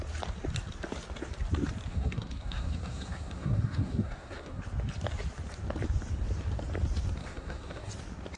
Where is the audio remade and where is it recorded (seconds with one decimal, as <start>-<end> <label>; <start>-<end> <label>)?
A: 0.0-1.9 recorded; 1.9-4.6 remade; 4.6-7.2 recorded; 7.2-7.9 remade; 7.9-8.4 recorded